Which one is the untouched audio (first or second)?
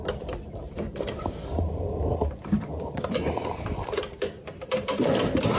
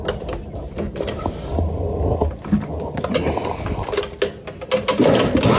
second